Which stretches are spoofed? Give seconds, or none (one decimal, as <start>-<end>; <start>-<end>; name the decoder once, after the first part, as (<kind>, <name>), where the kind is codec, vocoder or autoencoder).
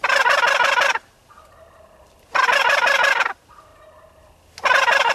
3.1-3.7 (vocoder, BigVGAN v2)